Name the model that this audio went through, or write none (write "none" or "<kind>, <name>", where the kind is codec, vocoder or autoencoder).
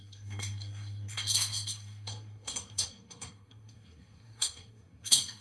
codec, SNAC